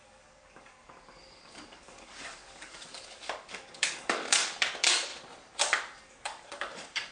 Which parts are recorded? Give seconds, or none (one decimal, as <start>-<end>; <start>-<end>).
5.1-6.1